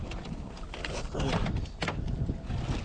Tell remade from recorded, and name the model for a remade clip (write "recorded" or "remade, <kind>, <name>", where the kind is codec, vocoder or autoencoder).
recorded